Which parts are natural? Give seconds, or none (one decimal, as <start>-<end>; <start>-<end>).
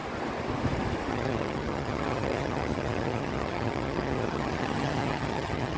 0.0-1.1